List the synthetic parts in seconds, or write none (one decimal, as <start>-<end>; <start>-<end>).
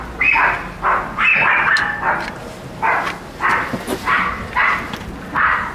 none